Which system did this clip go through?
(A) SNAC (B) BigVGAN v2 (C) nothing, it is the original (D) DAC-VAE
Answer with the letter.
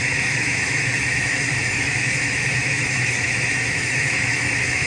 D